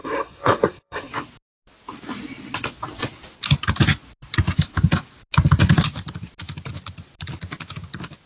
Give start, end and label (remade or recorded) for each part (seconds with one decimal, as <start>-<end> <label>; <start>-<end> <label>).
0.0-1.1 remade; 1.1-8.3 recorded